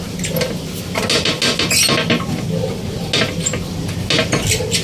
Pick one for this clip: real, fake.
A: real